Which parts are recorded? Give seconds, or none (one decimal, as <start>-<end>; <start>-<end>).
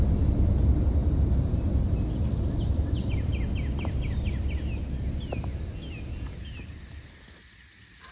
0.0-8.1